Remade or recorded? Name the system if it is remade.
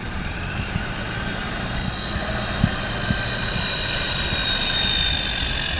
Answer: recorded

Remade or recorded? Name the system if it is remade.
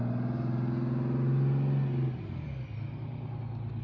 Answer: recorded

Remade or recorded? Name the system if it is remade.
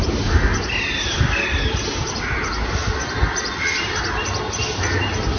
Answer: recorded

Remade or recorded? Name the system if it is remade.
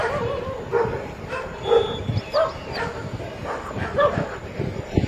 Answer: recorded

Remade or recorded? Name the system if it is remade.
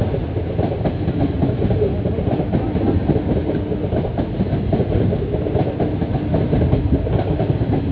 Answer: recorded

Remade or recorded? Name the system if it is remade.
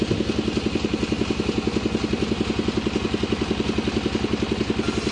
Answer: recorded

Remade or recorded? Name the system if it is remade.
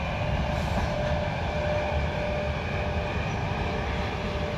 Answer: recorded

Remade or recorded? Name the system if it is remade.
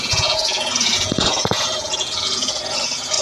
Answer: remade, vocoder, Vocos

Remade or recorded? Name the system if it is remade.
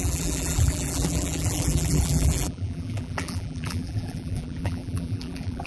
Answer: remade, vocoder, BigVGAN v2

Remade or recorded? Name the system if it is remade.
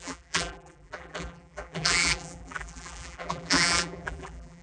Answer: remade, vocoder, BigVGAN v2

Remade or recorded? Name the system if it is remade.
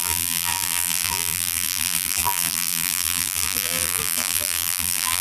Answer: remade, vocoder, BigVGAN v2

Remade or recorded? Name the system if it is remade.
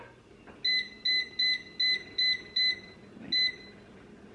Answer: recorded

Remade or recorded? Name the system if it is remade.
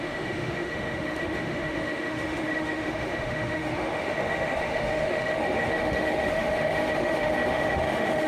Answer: remade, autoencoder, DAC-VAE